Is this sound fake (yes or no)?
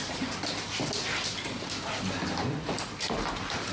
no